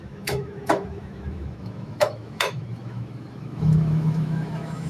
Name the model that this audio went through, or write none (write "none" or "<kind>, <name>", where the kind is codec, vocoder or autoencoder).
autoencoder, DAC-VAE